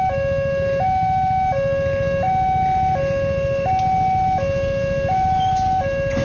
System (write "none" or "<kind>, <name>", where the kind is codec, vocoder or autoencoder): none